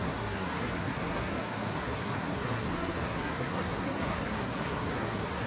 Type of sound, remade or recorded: remade